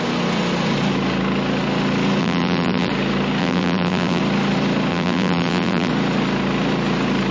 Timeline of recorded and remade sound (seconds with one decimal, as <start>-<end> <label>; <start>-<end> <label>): 0.0-2.2 recorded; 2.2-2.9 remade; 2.9-3.4 recorded; 3.4-4.2 remade; 4.2-4.9 recorded; 4.9-5.9 remade; 5.9-7.3 recorded